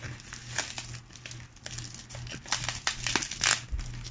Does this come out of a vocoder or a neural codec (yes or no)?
no